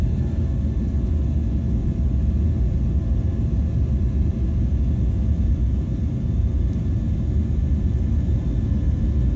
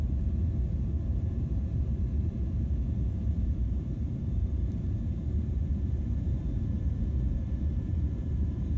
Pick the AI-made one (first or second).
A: second